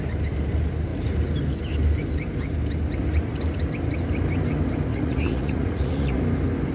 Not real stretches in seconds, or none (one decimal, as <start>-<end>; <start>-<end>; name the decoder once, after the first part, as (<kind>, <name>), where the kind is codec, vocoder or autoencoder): 4.9-6.2 (vocoder, Vocos)